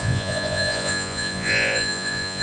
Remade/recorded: remade